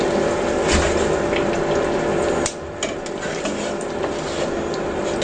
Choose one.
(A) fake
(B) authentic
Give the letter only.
B